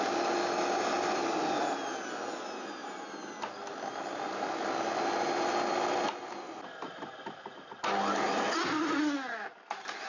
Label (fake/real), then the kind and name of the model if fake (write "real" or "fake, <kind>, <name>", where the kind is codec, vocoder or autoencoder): real